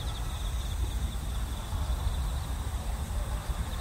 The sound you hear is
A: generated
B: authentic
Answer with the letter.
B